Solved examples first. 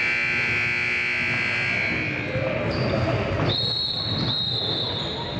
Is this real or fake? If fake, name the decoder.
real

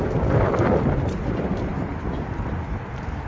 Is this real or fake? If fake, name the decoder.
real